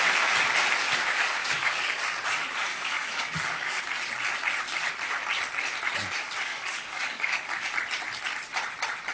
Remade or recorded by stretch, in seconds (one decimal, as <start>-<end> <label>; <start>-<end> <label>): 0.0-1.4 recorded; 1.4-2.0 remade; 2.0-2.7 recorded; 2.7-3.8 remade; 3.8-6.5 recorded; 6.5-7.7 remade; 7.7-9.1 recorded